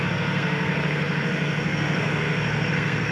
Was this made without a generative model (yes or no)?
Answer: no